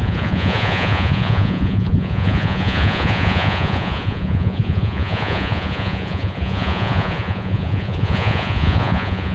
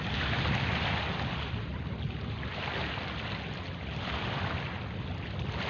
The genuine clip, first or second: second